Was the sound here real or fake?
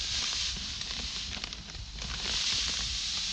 real